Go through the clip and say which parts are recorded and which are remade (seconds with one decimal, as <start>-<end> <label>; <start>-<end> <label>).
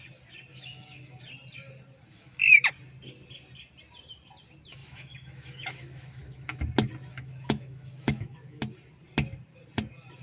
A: 0.0-0.5 recorded; 0.5-1.2 remade; 1.2-2.1 recorded; 2.1-2.7 remade; 2.7-4.8 recorded; 4.8-6.6 remade; 6.6-7.1 recorded; 7.1-8.6 remade; 8.6-10.2 recorded